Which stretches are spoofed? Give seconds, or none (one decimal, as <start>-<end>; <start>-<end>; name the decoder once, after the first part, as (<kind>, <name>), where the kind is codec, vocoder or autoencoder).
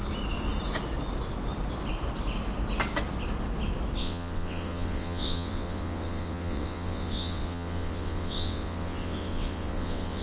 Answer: 4.0-10.2 (vocoder, WaveNeXt)